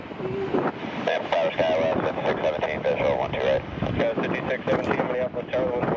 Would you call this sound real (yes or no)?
yes